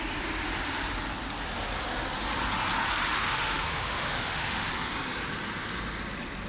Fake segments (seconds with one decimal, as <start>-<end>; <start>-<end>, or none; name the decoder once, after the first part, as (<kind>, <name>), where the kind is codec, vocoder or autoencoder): 3.1-4.7 (autoencoder, DAC-VAE)